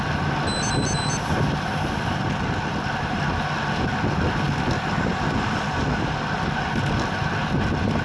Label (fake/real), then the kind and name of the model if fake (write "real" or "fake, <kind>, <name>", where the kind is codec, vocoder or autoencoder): real